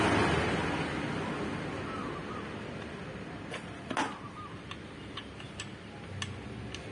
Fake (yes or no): no